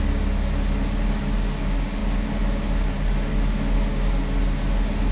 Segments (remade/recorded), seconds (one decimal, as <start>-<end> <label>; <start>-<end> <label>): 0.0-5.1 recorded